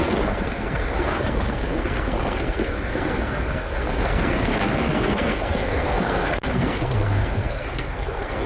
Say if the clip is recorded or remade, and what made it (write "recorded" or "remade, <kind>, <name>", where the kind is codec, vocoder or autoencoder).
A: remade, codec, SNAC